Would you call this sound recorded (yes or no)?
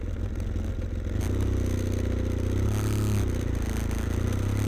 yes